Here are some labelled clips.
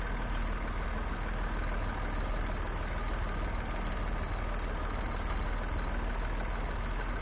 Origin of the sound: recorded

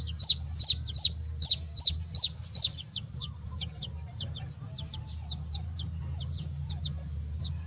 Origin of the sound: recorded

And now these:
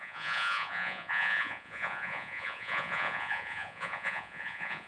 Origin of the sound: remade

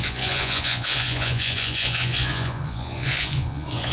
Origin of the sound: remade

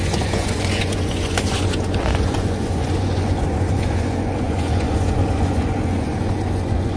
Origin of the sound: remade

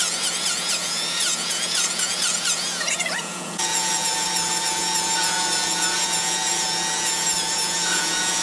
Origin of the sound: remade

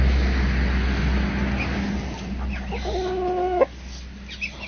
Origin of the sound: recorded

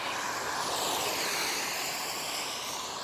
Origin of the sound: recorded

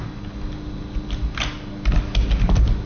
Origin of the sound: recorded